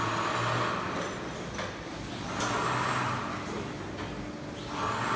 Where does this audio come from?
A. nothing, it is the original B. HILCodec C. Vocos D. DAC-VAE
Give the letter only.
A